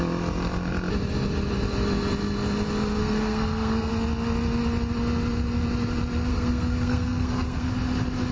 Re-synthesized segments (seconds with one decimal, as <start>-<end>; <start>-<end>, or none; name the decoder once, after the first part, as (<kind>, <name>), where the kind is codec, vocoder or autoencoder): 3.0-3.9 (codec, SNAC); 6.3-7.7